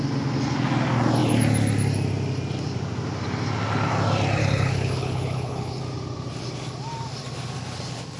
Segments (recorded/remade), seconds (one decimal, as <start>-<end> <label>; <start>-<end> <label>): 0.0-4.4 recorded; 4.4-5.8 remade; 5.8-8.2 recorded